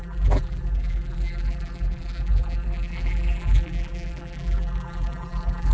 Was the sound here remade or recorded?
remade